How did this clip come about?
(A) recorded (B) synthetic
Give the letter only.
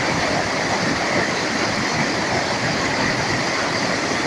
A